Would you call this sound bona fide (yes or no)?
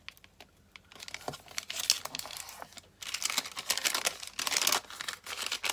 yes